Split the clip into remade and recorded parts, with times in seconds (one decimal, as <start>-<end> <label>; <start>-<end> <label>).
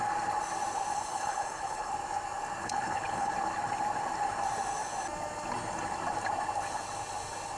0.0-0.9 recorded; 0.9-1.9 remade; 1.9-2.6 recorded; 2.6-3.3 remade; 3.3-7.6 recorded